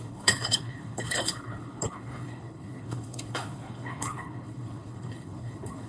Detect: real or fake fake